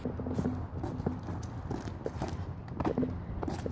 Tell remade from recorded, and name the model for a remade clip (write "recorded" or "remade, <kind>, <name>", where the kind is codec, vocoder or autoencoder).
recorded